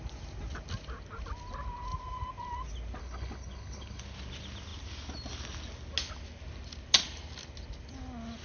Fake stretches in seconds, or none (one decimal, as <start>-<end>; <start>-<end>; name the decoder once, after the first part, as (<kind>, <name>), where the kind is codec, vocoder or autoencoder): 3.0-4.0 (codec, HILCodec)

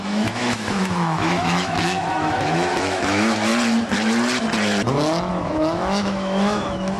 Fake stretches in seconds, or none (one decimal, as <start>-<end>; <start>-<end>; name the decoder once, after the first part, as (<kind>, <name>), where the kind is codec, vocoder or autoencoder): 0.0-3.5 (autoencoder, DAC-VAE); 5.3-7.0